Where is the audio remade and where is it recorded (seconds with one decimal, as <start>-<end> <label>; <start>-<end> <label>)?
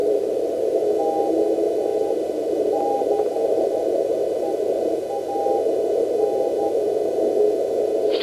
0.0-0.6 remade; 0.6-1.9 recorded; 1.9-5.0 remade; 5.0-8.2 recorded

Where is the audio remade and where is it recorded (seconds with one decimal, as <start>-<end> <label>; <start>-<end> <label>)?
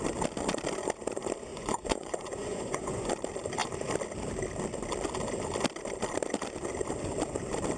0.0-1.5 recorded; 1.5-3.1 remade; 3.1-7.8 recorded